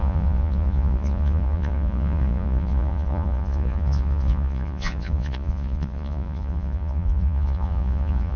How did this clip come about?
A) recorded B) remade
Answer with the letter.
B